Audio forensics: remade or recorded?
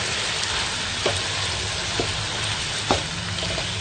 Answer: recorded